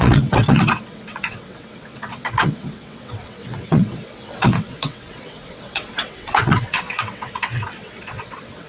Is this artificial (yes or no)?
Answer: yes